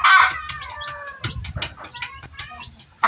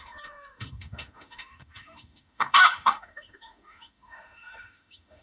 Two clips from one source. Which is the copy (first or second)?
second